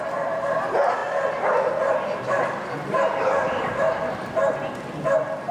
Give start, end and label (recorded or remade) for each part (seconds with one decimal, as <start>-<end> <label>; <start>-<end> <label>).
0.0-5.5 recorded